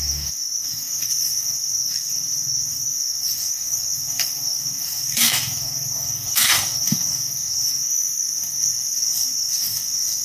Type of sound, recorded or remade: remade